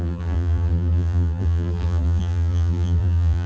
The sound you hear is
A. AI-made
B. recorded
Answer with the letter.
A